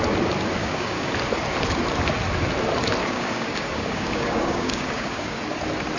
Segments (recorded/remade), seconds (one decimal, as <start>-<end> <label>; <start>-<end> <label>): 0.0-0.6 recorded; 0.6-1.1 remade; 1.1-3.0 recorded; 3.0-5.4 remade; 5.4-6.0 recorded